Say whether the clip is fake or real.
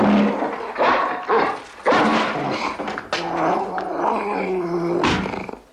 real